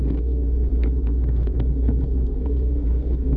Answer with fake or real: fake